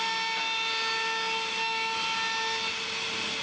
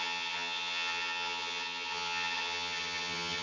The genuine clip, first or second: first